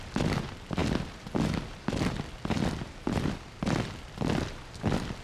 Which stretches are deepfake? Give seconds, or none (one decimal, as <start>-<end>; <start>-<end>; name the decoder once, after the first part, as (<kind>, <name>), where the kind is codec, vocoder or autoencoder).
none